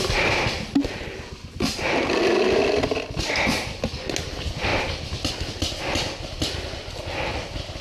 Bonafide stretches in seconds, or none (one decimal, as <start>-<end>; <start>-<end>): 0.0-7.8